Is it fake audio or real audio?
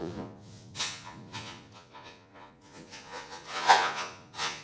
fake